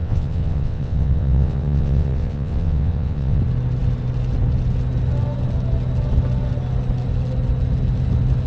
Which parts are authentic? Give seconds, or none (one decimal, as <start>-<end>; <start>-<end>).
3.4-8.5